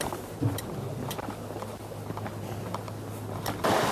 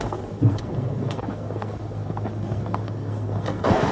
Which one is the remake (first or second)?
second